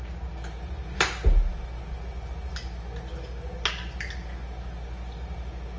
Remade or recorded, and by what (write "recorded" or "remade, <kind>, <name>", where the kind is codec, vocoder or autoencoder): recorded